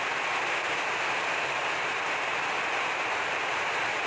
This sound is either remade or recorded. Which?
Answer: recorded